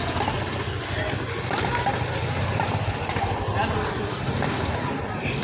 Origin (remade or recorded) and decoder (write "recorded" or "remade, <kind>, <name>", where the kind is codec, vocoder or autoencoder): recorded